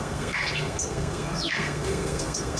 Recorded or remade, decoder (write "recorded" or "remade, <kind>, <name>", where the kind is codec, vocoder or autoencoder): remade, codec, SNAC